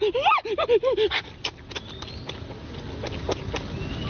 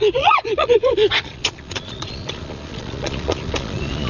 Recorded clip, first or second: first